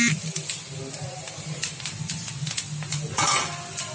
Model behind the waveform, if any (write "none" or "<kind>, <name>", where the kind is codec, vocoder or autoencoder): none